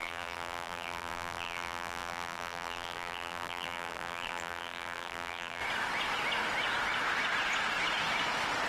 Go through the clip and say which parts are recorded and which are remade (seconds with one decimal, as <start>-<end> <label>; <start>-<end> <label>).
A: 0.0-5.6 remade; 5.6-8.7 recorded